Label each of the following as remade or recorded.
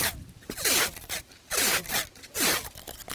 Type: recorded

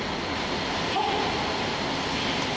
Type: recorded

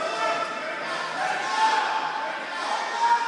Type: recorded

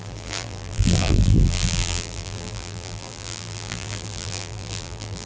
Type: remade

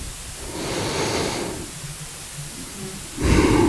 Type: recorded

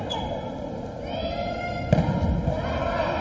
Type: recorded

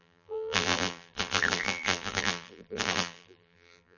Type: remade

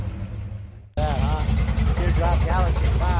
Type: recorded